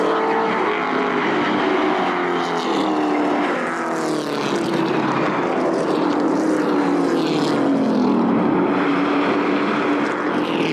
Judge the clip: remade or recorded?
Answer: recorded